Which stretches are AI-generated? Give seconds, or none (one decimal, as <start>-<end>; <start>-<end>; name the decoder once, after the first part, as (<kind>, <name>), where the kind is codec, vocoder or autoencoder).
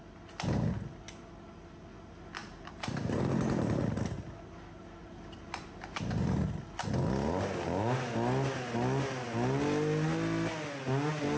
2.4-3.8 (vocoder, BigVGAN v2); 5.0-6.0